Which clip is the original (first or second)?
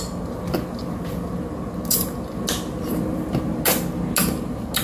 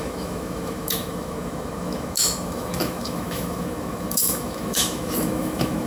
first